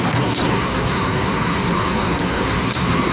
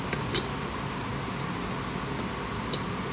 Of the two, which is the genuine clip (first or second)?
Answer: second